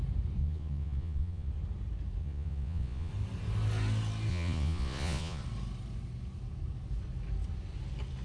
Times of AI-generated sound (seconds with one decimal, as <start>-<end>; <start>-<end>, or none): 0.4-1.5; 2.2-3.1; 4.3-5.4